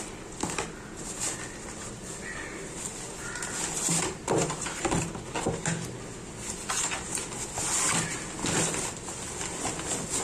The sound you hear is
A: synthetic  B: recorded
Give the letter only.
B